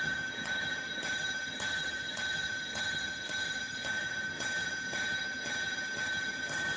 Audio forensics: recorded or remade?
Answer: remade